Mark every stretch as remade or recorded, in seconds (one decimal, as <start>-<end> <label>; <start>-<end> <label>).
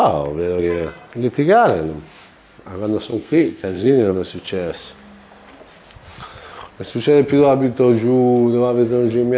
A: 0.0-3.1 recorded; 3.1-4.3 remade; 4.3-9.4 recorded